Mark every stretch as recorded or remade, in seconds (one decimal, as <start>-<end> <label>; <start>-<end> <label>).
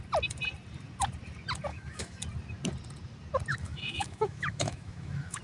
0.0-1.7 recorded; 1.7-2.2 remade; 2.2-3.5 recorded; 3.5-5.4 remade